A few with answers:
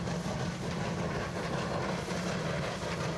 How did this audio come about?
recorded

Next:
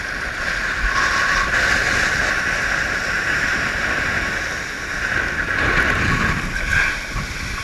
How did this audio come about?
recorded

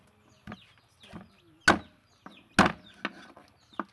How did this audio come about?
recorded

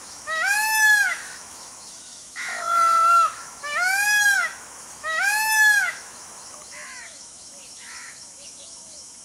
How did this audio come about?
remade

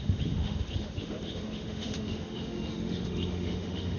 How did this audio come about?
remade